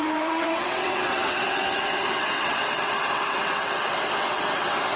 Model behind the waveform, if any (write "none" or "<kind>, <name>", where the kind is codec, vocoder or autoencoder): vocoder, WaveNeXt